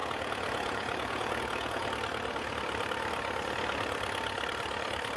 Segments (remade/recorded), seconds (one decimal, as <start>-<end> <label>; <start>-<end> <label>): 0.0-1.8 remade; 1.8-5.2 recorded